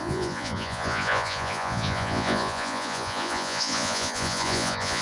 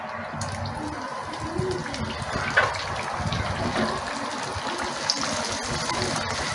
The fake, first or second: first